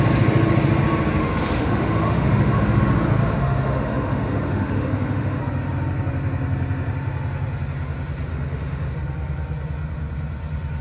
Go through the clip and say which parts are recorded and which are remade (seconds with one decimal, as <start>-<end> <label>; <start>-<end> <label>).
0.0-1.2 recorded; 1.2-2.8 remade; 2.8-3.2 recorded; 3.2-5.4 remade; 5.4-8.3 recorded; 8.3-8.9 remade; 8.9-10.8 recorded